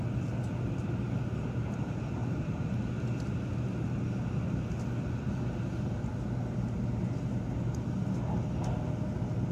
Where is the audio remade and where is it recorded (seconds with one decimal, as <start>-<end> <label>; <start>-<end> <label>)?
0.0-2.2 recorded; 2.2-2.8 remade; 2.8-9.5 recorded